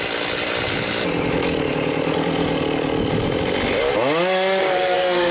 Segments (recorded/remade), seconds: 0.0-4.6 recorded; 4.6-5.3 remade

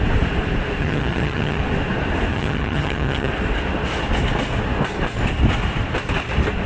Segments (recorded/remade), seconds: 0.0-0.8 recorded; 0.8-1.6 remade; 1.6-2.3 recorded; 2.3-3.3 remade; 3.3-6.7 recorded

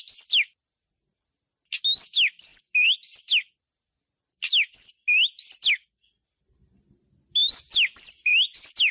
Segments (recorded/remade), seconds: 0.0-8.9 recorded

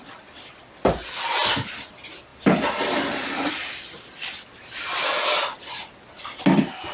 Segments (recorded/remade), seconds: 0.0-6.9 recorded

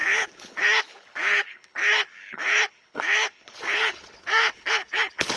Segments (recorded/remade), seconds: 0.0-5.4 remade